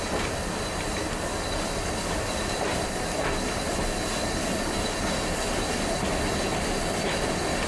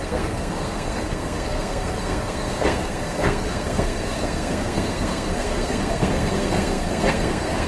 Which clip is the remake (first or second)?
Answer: second